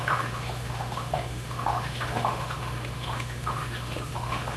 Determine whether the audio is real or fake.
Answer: fake